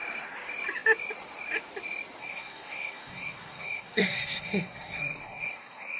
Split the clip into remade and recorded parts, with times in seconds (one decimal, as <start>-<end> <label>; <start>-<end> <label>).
0.0-2.2 recorded; 2.2-6.0 remade